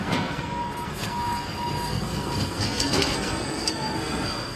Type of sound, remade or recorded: remade